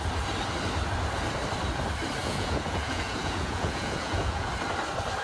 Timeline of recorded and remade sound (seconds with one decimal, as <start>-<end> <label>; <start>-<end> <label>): 0.0-2.2 recorded; 2.2-4.5 remade; 4.5-5.2 recorded